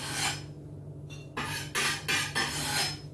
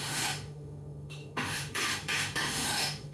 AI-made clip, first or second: second